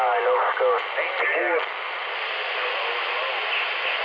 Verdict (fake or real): real